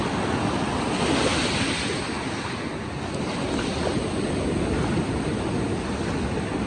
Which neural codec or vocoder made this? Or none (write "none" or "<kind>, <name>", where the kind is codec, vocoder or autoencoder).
none